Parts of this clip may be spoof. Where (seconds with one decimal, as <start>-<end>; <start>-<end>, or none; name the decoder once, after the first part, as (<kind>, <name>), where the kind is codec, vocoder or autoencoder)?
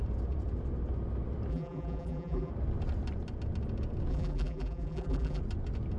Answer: 1.5-2.5 (vocoder, BigVGAN v2); 4.1-5.4